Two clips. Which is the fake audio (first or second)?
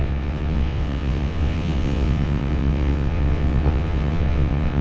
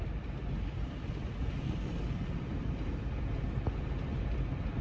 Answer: first